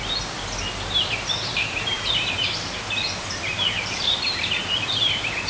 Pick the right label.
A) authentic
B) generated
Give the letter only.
A